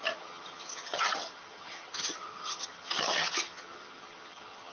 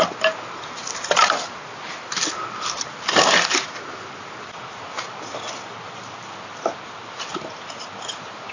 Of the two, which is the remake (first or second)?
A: first